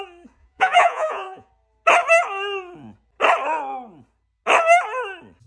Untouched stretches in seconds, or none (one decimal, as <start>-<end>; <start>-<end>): 0.0-0.4; 1.5-5.5